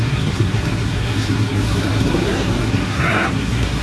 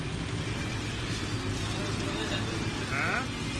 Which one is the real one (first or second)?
second